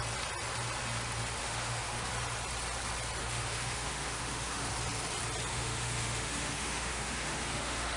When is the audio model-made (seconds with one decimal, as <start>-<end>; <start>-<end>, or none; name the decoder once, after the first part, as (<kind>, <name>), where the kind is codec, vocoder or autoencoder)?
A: 1.4-2.1 (autoencoder, DAC-VAE); 3.2-4.7; 5.5-8.0